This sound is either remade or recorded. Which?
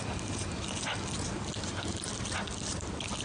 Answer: recorded